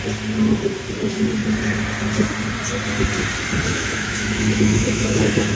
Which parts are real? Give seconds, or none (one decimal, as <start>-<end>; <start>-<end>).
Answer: 0.0-3.7